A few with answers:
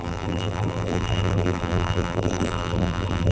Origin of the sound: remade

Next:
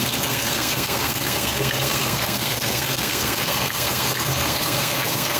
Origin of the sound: remade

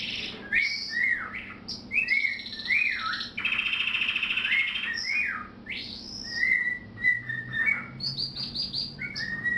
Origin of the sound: recorded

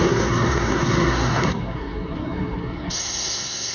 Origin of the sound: remade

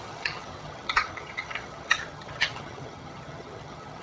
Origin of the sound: remade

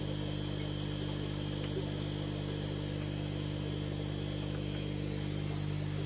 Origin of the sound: recorded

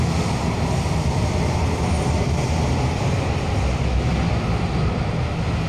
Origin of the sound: recorded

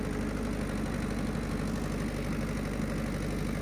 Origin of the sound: recorded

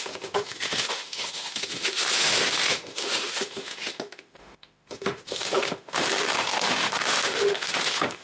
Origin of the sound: remade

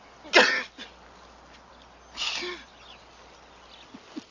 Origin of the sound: recorded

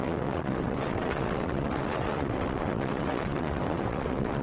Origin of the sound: remade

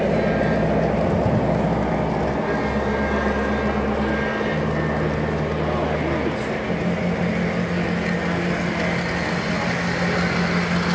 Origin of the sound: recorded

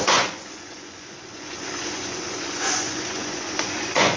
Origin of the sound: remade